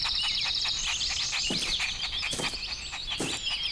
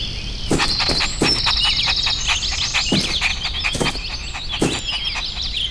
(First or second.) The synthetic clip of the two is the first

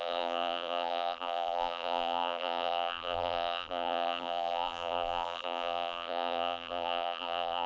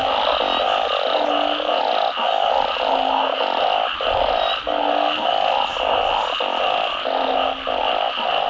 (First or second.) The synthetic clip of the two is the first